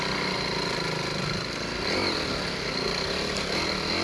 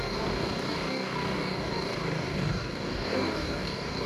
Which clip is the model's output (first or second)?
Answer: second